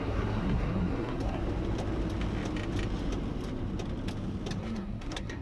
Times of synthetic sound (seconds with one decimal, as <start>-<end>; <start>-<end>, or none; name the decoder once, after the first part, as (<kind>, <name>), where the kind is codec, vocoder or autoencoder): 0.0-1.4 (codec, SNAC); 4.6-5.4